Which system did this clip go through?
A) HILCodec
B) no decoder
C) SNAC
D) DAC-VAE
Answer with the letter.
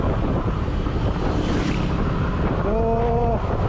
B